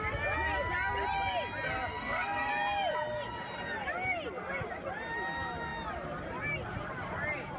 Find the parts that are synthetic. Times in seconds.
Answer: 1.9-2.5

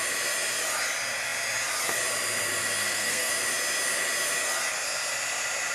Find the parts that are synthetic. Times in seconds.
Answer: 2.8-3.3

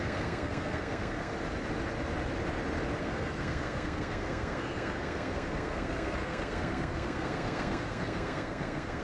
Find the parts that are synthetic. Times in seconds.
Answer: 0.0-1.3; 3.0-9.0

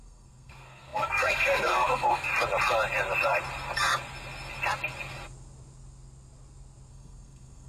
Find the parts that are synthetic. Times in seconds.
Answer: 0.0-2.3; 6.9-7.7

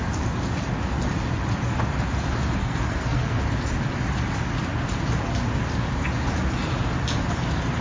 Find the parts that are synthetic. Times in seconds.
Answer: 2.6-3.4

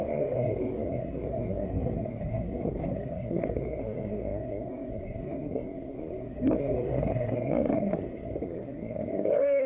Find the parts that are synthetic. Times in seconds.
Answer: 0.0-9.7